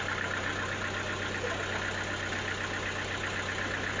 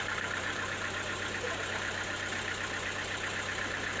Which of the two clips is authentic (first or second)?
first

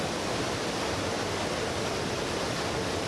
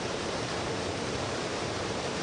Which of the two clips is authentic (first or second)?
first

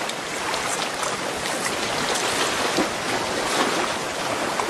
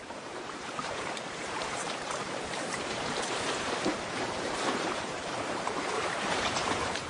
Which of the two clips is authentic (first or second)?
first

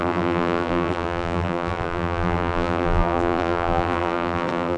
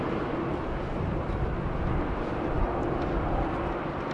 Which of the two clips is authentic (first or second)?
second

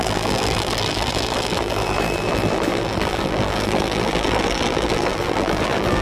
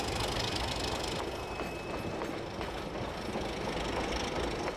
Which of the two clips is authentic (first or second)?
second